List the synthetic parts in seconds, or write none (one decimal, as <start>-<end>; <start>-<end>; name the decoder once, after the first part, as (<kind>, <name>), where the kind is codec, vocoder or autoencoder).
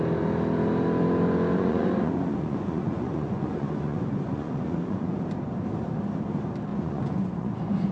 1.5-5.2 (vocoder, Vocos); 6.7-7.5